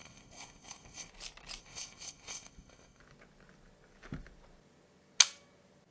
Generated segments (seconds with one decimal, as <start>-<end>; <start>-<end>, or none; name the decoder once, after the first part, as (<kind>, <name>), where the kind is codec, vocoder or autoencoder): 0.0-1.1 (codec, ZipCodec); 1.6-3.0